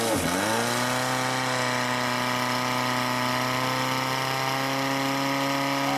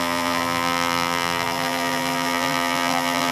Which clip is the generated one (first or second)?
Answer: second